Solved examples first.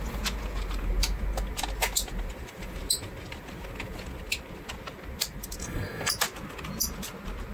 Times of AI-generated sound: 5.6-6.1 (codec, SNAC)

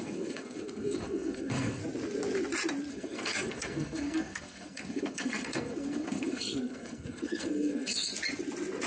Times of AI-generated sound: 0.0-1.8 (codec, SNAC); 2.9-8.1